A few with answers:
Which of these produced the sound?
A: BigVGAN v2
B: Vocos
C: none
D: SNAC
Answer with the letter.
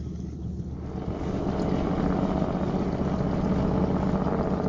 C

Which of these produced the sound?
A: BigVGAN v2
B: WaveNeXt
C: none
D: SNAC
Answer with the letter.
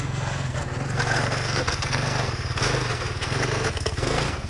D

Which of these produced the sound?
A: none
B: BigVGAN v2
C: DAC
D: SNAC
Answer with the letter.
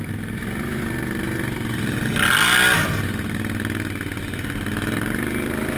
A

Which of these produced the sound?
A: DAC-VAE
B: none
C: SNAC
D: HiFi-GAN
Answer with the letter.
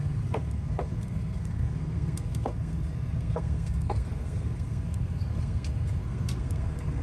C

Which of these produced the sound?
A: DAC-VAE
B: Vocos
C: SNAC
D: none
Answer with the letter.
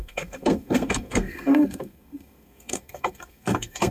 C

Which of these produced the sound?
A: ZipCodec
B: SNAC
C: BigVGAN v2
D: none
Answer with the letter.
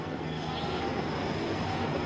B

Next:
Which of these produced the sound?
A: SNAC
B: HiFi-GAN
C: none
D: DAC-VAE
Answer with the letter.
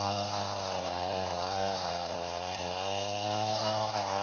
A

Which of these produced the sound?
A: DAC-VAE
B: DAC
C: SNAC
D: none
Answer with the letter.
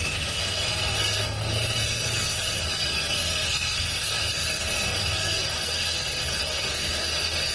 C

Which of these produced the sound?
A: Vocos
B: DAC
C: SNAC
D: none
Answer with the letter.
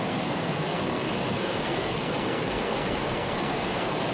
C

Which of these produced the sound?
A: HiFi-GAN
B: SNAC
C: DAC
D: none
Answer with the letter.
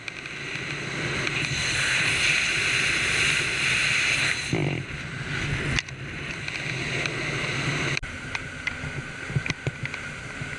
D